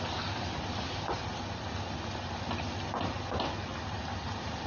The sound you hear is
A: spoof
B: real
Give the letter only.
B